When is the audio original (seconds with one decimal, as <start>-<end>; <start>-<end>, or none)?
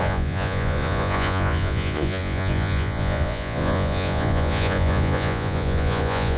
none